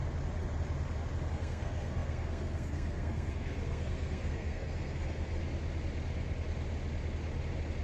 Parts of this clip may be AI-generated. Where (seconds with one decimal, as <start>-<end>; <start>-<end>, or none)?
1.3-5.4